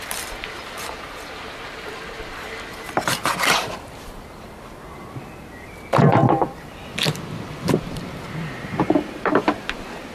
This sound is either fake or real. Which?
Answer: fake